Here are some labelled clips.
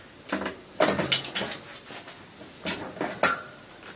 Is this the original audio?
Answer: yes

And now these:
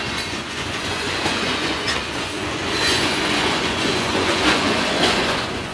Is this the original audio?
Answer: no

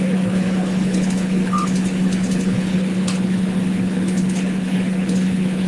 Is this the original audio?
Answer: no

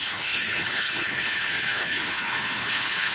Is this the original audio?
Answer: no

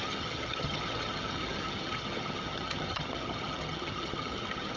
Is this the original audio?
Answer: no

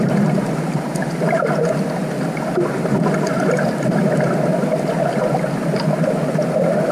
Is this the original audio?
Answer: yes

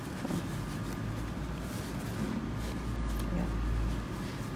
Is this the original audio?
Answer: yes